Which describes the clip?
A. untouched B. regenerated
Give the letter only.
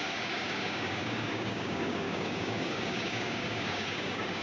B